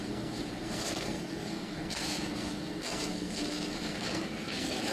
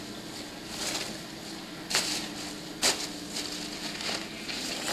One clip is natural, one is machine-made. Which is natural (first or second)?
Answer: second